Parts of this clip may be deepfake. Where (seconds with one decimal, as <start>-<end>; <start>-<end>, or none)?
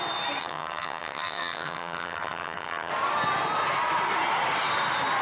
0.4-2.9